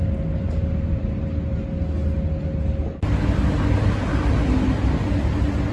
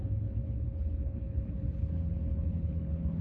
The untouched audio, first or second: first